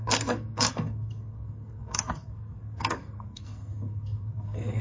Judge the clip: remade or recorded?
remade